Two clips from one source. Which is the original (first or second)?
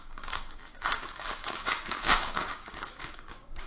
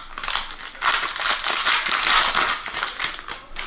second